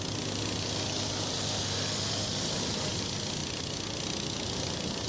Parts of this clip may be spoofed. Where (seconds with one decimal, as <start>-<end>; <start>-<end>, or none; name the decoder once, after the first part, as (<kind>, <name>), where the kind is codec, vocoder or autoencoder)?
none